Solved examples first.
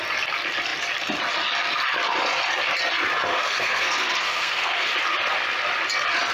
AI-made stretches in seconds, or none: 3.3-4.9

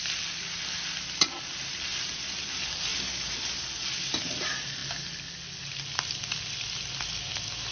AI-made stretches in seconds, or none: none